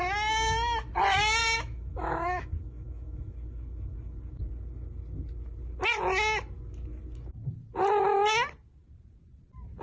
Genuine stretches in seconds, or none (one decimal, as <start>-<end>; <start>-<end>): 0.0-1.4; 3.3-9.8